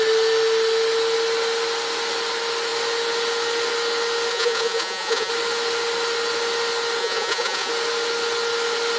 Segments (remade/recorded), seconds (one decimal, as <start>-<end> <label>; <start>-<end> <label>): 0.0-4.3 recorded; 4.3-5.3 remade; 5.3-7.0 recorded; 7.0-7.7 remade; 7.7-9.0 recorded